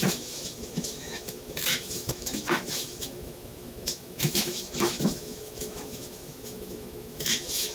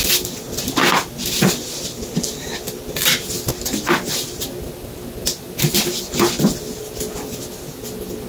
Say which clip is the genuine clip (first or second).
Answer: second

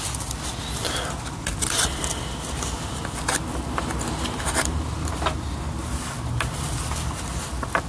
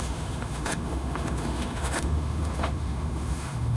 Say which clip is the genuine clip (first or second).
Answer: first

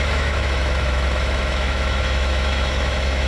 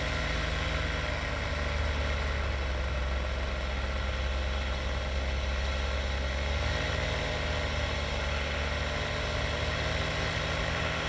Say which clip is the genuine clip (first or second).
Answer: second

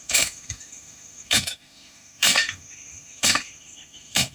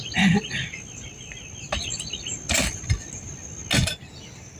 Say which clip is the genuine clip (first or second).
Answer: second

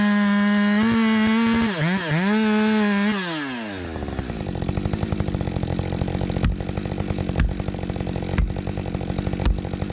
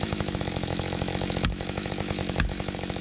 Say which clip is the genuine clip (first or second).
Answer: first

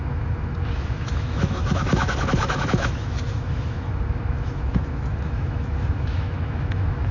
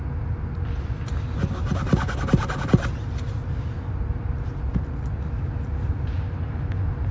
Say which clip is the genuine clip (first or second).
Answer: second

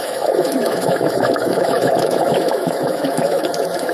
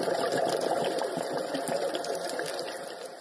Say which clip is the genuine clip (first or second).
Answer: second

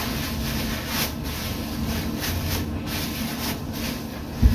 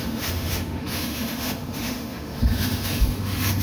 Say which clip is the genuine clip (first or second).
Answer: first